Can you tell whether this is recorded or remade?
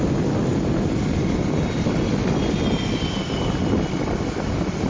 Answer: recorded